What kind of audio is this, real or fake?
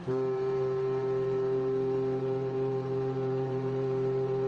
fake